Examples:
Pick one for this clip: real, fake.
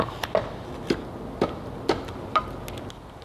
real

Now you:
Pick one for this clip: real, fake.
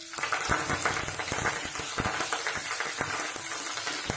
real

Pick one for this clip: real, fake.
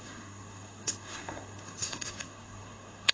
fake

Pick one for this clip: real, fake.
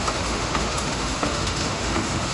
fake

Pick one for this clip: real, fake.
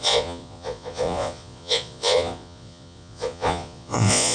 fake